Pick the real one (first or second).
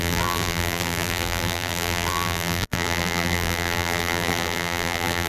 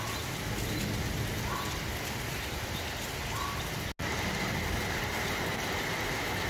second